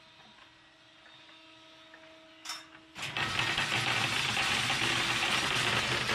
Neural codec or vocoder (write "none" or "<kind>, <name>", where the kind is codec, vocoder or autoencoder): none